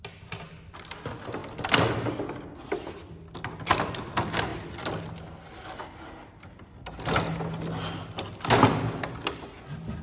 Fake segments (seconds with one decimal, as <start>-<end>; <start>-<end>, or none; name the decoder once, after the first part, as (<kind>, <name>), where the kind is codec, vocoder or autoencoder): none